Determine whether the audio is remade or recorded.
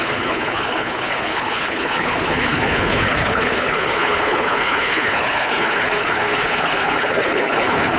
remade